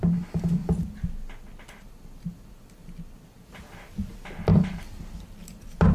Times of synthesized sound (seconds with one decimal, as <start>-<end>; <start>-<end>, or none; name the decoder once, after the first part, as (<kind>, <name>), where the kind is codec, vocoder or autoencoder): none